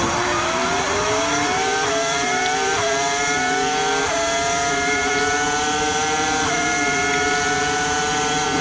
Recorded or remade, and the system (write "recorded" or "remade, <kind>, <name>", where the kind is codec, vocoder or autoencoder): remade, vocoder, BigVGAN v2